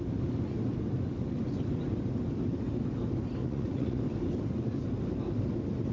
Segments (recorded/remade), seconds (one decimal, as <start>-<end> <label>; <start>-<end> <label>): 0.0-3.4 recorded; 3.4-4.0 remade; 4.0-5.9 recorded